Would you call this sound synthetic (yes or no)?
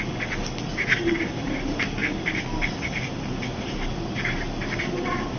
no